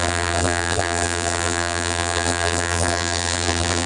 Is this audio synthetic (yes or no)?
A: yes